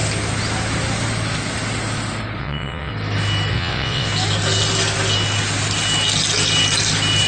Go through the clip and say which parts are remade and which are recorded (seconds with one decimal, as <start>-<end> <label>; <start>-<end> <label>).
0.0-2.4 recorded; 2.4-2.9 remade; 2.9-3.5 recorded; 3.5-4.1 remade; 4.1-7.3 recorded